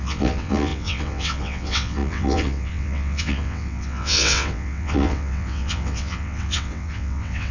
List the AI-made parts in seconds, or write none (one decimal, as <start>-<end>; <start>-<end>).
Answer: 0.0-7.5